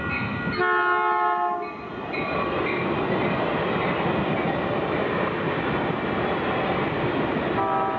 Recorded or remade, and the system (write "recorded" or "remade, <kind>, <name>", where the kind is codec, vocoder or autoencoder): recorded